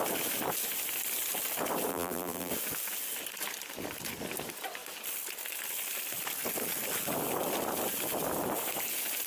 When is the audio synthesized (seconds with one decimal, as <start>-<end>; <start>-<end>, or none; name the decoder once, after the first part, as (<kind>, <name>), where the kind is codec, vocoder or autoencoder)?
1.9-2.5 (vocoder, BigVGAN v2)